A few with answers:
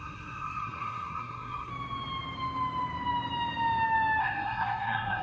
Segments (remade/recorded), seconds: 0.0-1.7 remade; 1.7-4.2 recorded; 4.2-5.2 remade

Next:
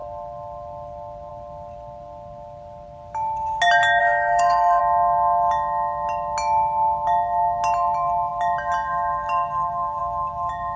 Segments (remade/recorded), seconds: 0.0-4.0 recorded; 4.0-4.8 remade; 4.8-10.8 recorded

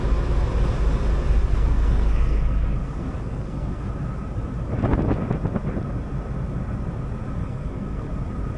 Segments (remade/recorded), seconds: 0.0-1.5 recorded; 1.5-3.9 remade; 3.9-7.4 recorded; 7.4-8.1 remade; 8.1-8.6 recorded

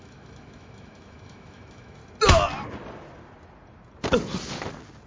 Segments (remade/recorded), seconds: 0.0-2.0 remade; 2.0-5.1 recorded